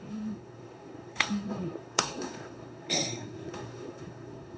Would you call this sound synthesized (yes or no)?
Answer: yes